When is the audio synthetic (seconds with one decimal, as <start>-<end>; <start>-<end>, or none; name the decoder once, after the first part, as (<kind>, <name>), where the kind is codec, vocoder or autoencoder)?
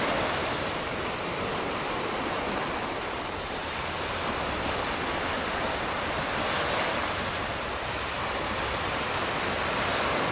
0.4-3.8 (vocoder, BigVGAN v2); 6.9-7.7